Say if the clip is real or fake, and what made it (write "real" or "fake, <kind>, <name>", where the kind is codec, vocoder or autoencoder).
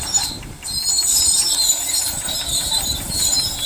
fake, vocoder, BigVGAN v2